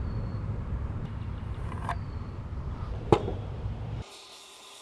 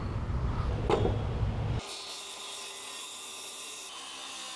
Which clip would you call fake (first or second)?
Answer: first